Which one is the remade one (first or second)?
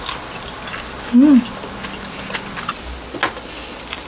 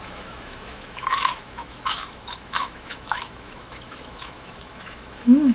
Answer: second